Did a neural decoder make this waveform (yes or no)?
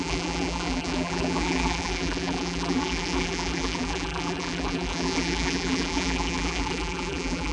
yes